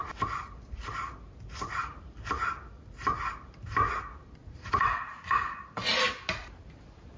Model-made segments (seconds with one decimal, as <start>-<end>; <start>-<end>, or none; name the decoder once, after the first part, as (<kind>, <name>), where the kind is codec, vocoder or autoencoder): 4.4-5.6 (vocoder, Vocos)